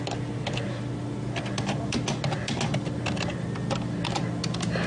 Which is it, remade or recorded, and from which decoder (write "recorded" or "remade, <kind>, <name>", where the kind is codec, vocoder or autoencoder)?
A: recorded